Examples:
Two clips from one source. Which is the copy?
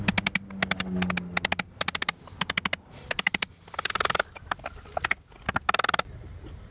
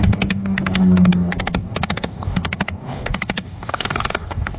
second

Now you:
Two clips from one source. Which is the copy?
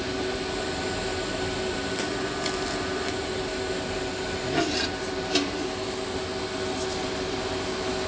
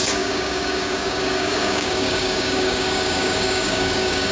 second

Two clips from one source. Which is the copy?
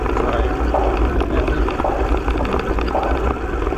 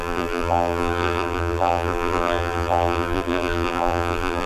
second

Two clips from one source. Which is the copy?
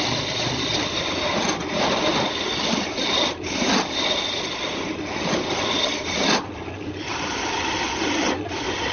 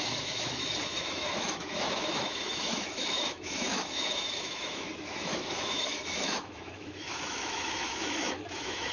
second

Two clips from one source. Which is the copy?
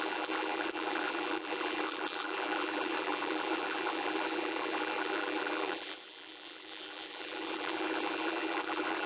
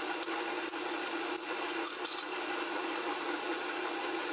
first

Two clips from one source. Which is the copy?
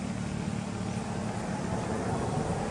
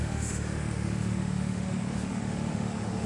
second